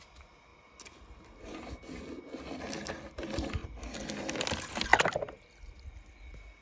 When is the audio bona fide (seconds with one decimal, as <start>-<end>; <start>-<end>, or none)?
0.0-6.6

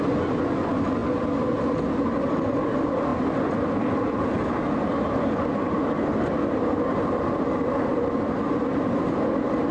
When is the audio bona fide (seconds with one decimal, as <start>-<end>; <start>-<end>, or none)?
0.0-1.0; 1.6-7.9; 8.6-9.7

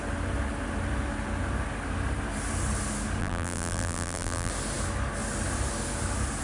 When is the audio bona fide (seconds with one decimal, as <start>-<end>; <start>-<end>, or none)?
0.0-3.2; 4.5-6.4

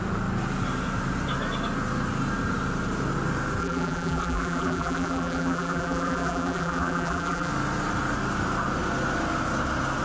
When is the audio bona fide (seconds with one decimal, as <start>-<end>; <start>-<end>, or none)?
0.0-3.6; 7.5-10.0

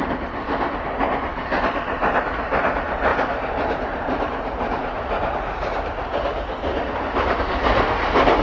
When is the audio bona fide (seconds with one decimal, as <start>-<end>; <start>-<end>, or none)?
0.0-3.1; 7.4-8.4

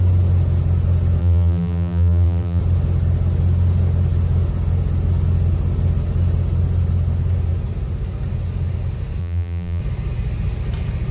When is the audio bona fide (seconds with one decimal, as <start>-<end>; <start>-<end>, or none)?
0.0-1.2; 2.6-9.2; 9.8-11.1